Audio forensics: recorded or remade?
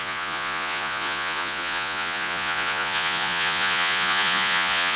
remade